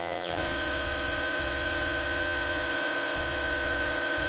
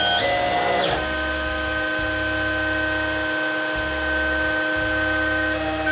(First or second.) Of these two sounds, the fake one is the first